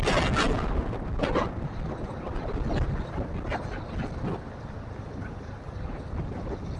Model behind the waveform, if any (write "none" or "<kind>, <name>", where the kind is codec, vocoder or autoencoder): none